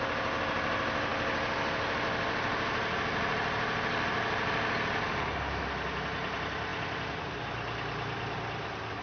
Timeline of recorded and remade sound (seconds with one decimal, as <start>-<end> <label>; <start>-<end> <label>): 0.0-9.0 recorded